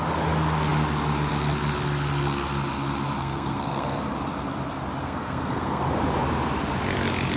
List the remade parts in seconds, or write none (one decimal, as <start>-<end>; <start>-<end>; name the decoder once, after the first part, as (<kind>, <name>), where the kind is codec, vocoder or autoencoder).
3.2-4.0 (codec, SNAC); 5.0-5.8